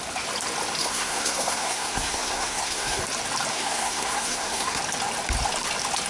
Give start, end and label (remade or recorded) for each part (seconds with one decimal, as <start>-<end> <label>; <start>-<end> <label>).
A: 0.0-0.8 recorded; 0.8-3.0 remade; 3.0-3.5 recorded; 3.5-4.8 remade; 4.8-6.1 recorded